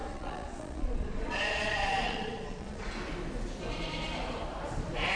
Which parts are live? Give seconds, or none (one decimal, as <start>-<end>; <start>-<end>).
2.9-5.2

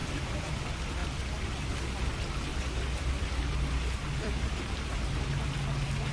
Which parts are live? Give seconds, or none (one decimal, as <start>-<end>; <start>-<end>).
0.5-1.0; 1.7-2.5; 5.2-6.1

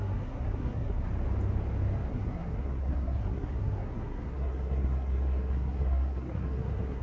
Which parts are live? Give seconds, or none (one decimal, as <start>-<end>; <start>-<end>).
1.1-2.1

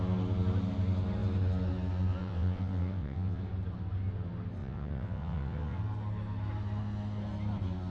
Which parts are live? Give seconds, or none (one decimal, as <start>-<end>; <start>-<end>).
0.0-2.2; 3.4-4.6; 5.8-7.9

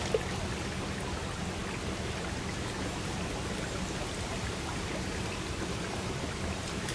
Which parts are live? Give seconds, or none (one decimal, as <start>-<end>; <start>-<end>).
0.0-6.9

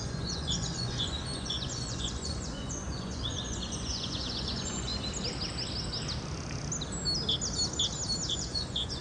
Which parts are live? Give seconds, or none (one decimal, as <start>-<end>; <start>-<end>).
4.9-8.3